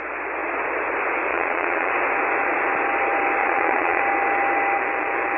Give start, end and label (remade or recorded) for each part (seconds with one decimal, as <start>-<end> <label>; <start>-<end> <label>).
0.0-1.3 recorded; 1.3-1.9 remade; 1.9-3.4 recorded; 3.4-4.0 remade; 4.0-5.4 recorded